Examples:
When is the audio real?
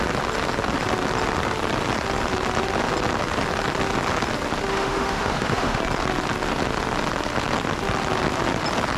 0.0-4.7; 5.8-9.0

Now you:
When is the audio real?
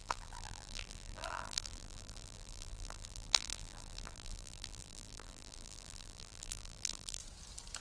7.2-7.8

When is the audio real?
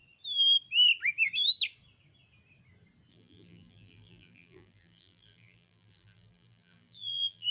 0.0-3.1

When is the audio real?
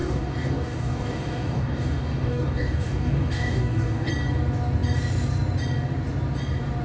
4.1-6.8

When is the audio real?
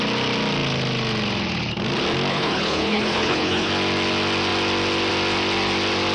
0.0-2.3; 3.7-6.1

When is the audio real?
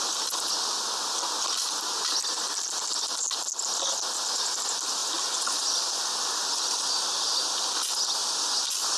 0.0-9.0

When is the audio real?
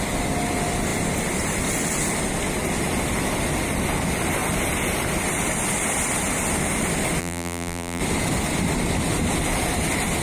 0.0-7.2; 8.0-10.2